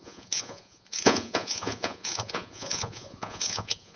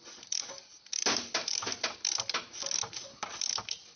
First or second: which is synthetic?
first